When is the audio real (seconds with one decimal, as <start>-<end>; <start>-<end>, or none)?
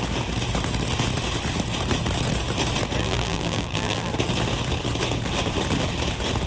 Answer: 0.0-3.0; 4.1-6.5